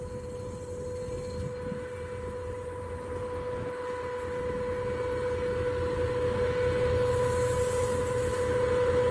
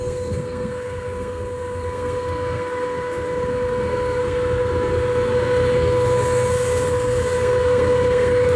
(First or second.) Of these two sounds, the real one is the first